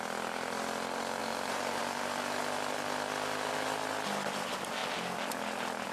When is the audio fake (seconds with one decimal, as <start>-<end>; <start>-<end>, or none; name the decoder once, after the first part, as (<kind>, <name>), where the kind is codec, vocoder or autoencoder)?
1.2-1.8 (vocoder, BigVGAN v2)